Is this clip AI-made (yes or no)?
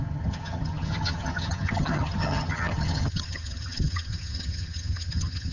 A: yes